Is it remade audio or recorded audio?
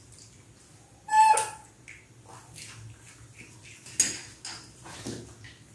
recorded